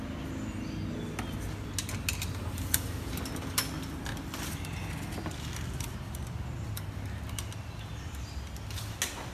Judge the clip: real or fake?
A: real